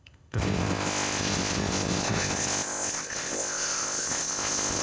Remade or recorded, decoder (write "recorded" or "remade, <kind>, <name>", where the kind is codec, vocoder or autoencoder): remade, codec, ZipCodec